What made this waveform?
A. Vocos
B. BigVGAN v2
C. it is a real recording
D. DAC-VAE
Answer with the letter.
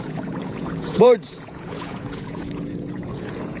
A